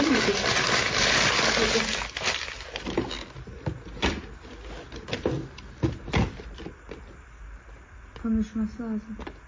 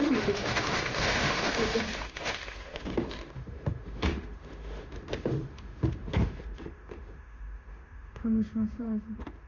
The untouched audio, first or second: first